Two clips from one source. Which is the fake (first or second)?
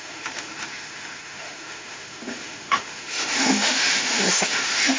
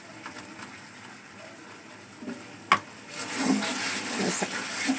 first